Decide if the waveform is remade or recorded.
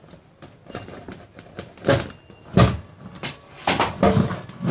recorded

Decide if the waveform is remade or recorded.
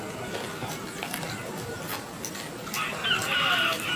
recorded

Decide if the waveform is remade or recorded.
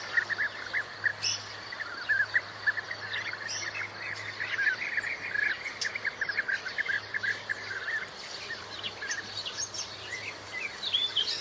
recorded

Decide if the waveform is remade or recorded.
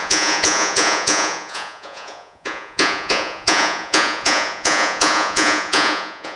remade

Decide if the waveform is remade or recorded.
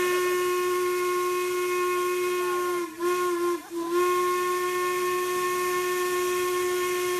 recorded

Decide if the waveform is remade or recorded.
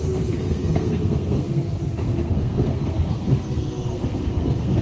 remade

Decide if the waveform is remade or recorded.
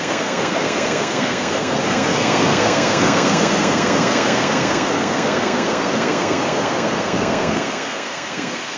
remade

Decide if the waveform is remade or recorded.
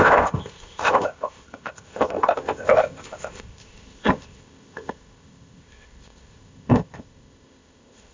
remade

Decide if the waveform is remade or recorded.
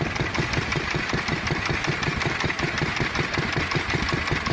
recorded